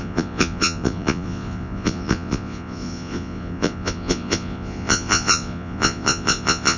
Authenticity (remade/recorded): remade